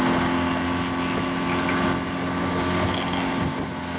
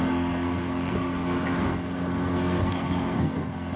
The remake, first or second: second